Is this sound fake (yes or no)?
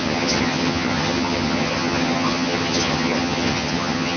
yes